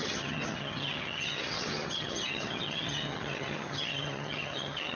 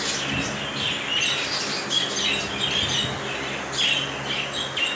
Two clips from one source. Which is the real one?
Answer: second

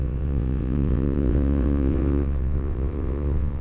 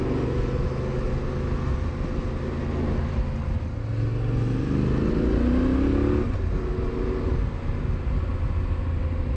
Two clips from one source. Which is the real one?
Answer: second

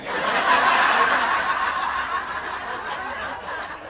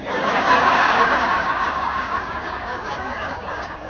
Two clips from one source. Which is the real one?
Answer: first